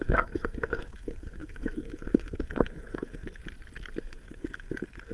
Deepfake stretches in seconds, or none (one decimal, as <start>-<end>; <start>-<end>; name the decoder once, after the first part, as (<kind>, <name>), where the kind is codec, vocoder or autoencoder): 0.0-3.4 (codec, SNAC); 4.0-5.1